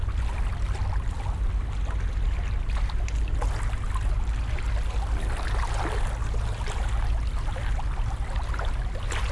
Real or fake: real